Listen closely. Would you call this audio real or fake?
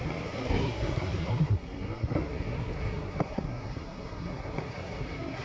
fake